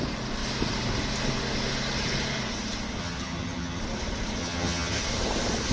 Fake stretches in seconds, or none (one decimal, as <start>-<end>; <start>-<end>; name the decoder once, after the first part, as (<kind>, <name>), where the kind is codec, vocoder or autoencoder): 3.0-3.8 (vocoder, HiFi-GAN); 4.4-5.0